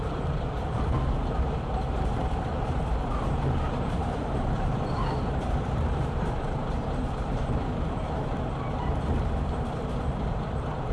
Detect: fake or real fake